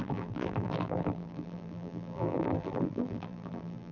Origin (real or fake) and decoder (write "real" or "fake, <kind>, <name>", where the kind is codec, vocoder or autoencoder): fake, vocoder, BigVGAN v2